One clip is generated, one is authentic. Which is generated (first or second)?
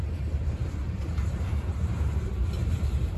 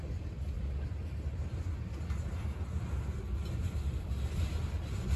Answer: first